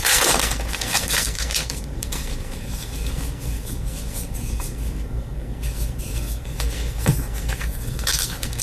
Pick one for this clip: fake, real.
fake